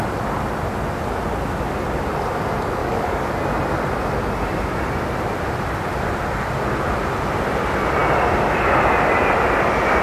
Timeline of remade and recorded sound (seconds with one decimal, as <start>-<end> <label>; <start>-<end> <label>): 0.0-2.8 recorded; 2.8-3.3 remade; 3.3-10.0 recorded